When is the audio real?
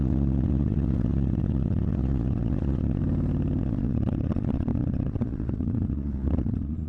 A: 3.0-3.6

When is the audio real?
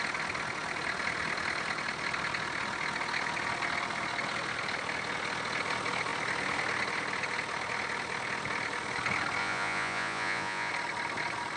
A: 0.0-9.4; 10.7-11.6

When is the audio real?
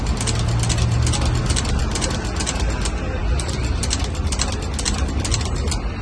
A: 0.0-6.0